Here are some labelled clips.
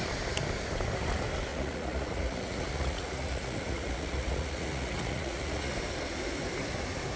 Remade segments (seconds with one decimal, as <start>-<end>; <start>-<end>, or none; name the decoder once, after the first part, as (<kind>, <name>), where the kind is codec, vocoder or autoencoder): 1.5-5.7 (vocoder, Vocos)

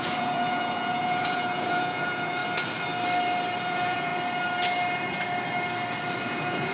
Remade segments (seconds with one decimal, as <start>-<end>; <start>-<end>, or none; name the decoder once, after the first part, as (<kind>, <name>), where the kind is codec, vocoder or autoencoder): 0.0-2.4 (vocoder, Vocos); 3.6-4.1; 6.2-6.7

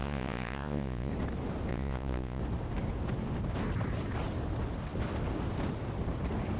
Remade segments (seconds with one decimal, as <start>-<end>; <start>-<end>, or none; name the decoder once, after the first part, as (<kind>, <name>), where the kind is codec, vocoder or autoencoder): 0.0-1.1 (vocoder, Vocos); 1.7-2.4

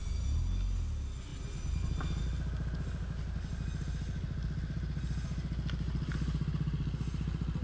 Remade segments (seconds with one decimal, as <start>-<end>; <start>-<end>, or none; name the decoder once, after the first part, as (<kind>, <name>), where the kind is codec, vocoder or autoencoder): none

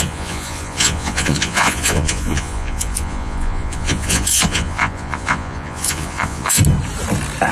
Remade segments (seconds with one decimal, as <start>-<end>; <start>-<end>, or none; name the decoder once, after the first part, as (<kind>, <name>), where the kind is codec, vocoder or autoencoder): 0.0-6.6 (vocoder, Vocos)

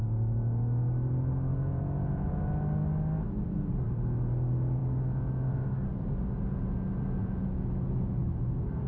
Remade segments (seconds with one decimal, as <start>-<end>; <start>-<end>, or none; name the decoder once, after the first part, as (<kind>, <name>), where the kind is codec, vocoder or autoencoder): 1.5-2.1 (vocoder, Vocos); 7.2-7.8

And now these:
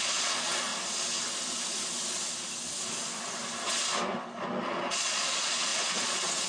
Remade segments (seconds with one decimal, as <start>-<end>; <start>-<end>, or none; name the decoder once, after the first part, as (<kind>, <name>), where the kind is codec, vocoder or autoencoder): 0.0-0.7 (vocoder, Vocos); 4.6-6.5

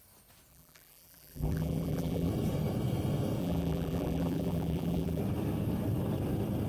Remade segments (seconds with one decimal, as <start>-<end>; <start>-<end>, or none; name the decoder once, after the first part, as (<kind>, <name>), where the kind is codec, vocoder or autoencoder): 0.5-2.3 (vocoder, BigVGAN v2); 3.4-5.2